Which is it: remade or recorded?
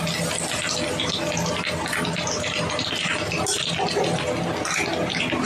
recorded